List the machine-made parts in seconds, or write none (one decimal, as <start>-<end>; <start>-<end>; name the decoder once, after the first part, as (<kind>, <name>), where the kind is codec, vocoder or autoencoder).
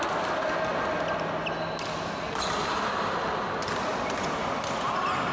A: none